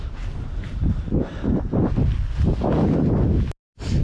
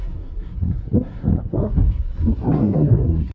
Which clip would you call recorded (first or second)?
first